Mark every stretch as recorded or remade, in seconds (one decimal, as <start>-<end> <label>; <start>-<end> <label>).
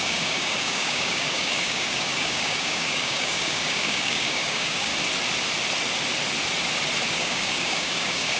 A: 0.0-4.9 remade; 4.9-7.1 recorded; 7.1-8.4 remade